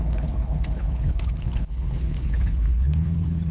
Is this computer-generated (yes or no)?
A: yes